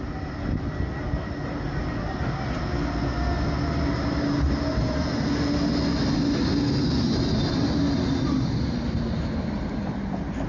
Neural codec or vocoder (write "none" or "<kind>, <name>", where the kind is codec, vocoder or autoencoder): none